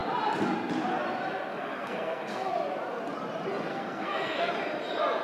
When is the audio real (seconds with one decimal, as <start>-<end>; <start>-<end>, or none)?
0.0-1.5; 2.5-3.7; 4.5-5.2